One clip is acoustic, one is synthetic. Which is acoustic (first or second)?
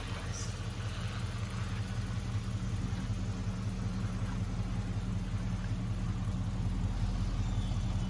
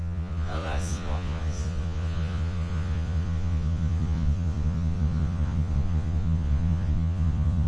first